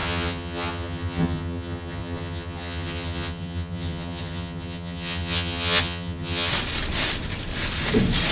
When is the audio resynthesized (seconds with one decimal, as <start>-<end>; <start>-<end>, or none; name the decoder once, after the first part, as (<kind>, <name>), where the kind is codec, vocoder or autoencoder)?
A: 0.0-6.5 (vocoder, HiFi-GAN)